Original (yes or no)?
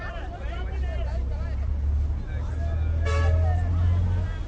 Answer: yes